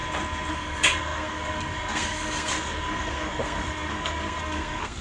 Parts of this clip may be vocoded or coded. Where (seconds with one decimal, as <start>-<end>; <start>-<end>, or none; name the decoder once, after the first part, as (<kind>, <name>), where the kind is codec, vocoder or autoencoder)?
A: 0.5-5.0 (codec, SNAC)